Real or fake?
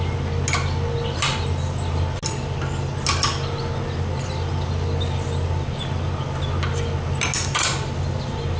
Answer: real